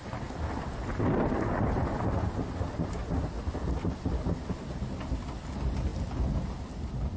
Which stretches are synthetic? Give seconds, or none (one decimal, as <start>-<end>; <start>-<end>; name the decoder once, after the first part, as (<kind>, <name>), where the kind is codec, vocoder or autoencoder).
none